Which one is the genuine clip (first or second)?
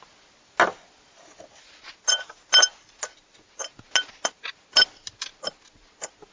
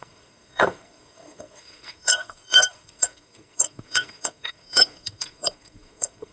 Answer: first